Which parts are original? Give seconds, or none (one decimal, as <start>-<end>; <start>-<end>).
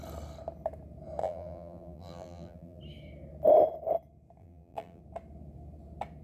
0.0-1.2; 2.8-4.4; 5.0-6.2